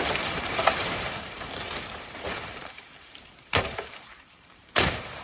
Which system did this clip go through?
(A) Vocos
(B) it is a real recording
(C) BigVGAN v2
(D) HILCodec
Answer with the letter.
C